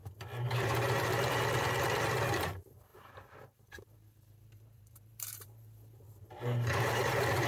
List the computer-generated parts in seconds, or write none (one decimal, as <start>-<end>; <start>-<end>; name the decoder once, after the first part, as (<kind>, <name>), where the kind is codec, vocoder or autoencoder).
0.5-1.1 (vocoder, BigVGAN v2); 2.3-7.5